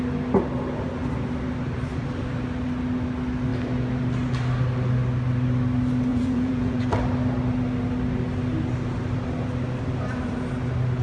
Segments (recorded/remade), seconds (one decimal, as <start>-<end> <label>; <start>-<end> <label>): 0.0-6.1 recorded; 6.1-6.8 remade; 6.8-11.0 recorded